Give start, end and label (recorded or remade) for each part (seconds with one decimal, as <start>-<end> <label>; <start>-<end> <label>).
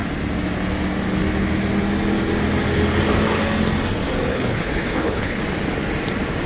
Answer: 0.0-4.3 recorded; 4.3-5.4 remade; 5.4-6.5 recorded